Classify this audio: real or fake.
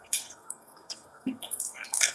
fake